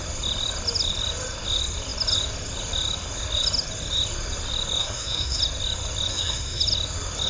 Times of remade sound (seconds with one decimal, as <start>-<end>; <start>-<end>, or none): 4.8-5.4; 6.1-6.6